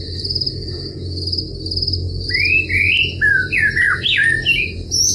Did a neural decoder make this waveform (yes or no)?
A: no